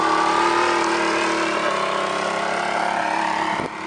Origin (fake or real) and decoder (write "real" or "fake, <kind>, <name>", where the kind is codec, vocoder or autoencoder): real